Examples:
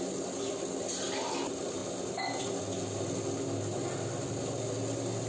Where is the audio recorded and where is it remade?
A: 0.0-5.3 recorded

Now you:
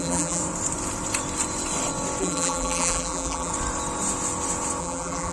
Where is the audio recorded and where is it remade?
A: 0.0-0.4 remade; 0.4-2.2 recorded; 2.2-3.5 remade; 3.5-4.8 recorded; 4.8-5.3 remade

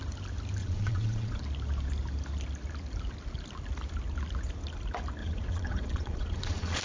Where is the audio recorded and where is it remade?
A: 0.0-0.6 recorded; 0.6-1.4 remade; 1.4-5.2 recorded; 5.2-6.8 remade

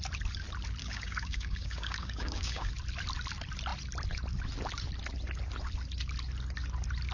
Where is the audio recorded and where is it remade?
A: 0.0-0.8 recorded; 0.8-2.7 remade; 2.7-7.1 recorded